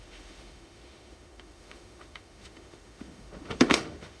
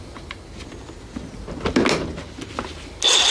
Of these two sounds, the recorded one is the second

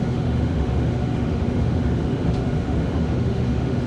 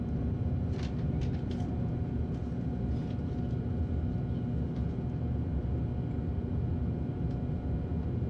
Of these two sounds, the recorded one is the second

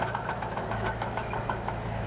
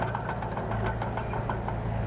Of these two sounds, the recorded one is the second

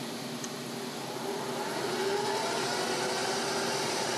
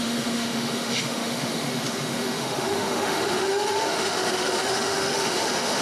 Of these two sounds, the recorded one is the first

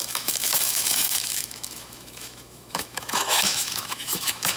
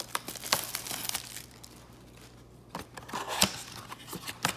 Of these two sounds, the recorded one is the second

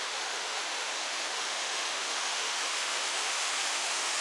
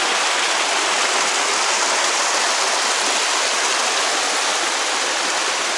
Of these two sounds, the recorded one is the second